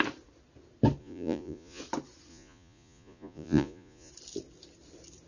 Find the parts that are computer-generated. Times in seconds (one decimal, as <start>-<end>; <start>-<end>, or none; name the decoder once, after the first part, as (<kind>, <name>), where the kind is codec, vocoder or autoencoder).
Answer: 1.0-1.8 (vocoder, Vocos); 2.3-4.1